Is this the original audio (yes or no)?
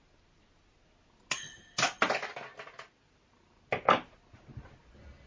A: yes